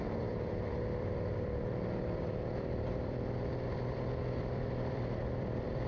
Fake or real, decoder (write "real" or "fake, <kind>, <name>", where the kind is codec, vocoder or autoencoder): fake, vocoder, BigVGAN v2